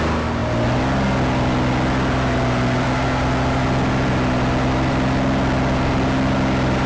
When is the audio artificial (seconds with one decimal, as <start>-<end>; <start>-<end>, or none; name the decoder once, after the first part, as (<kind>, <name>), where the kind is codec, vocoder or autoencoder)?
none